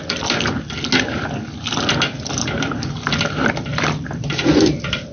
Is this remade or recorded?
recorded